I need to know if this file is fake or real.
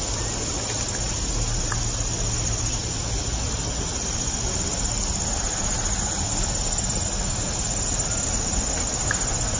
real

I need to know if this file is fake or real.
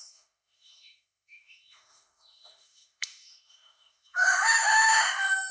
fake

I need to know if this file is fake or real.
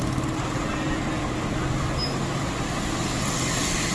real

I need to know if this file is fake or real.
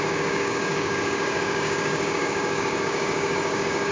fake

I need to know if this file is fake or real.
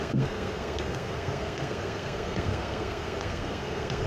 fake